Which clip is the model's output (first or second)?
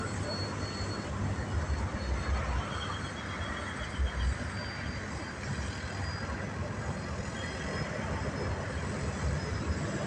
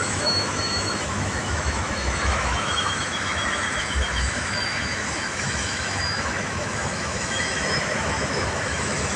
second